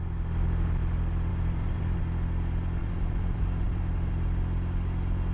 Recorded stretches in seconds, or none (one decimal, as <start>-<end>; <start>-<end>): 0.0-1.3; 2.0-2.8; 4.3-5.3